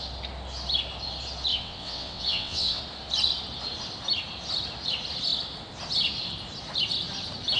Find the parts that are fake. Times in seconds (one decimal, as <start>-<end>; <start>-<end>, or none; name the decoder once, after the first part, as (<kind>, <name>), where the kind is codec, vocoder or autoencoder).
1.5-2.8 (vocoder, WaveNeXt)